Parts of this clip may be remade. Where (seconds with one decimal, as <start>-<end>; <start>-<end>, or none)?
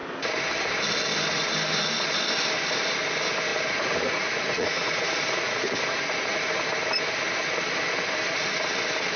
3.5-6.5